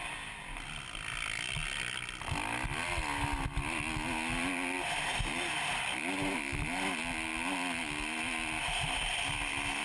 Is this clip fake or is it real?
real